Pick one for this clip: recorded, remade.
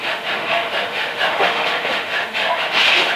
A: remade